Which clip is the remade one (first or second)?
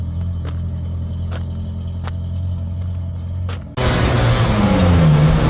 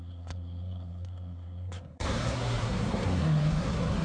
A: second